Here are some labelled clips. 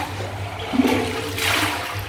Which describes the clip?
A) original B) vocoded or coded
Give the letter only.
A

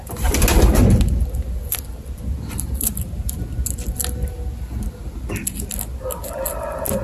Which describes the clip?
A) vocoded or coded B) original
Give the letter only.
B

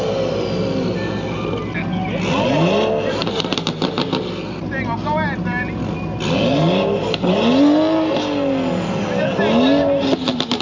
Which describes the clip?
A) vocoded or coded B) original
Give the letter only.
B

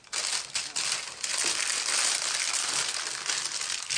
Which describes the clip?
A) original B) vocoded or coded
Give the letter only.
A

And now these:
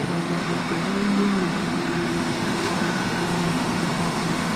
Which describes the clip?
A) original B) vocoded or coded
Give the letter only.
B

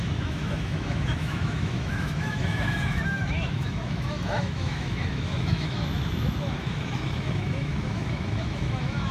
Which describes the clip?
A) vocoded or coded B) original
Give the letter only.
A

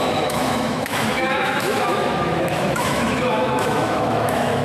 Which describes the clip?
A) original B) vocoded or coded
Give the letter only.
B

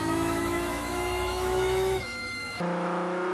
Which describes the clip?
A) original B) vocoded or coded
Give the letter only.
B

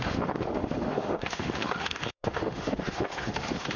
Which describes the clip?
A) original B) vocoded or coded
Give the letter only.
B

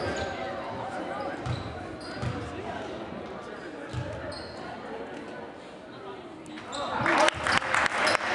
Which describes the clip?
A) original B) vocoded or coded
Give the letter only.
A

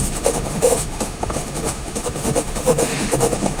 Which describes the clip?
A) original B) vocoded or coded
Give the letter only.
B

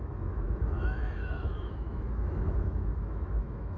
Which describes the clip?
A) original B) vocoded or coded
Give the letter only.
B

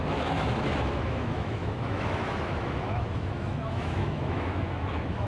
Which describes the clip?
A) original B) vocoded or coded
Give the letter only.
B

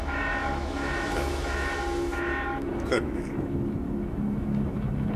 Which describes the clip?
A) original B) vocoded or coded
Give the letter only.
B